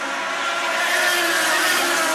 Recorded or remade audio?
recorded